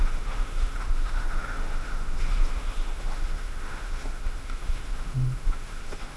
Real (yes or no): no